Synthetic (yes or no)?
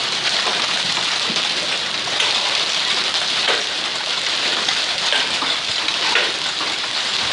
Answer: no